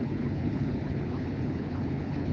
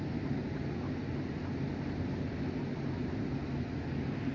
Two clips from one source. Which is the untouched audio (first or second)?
second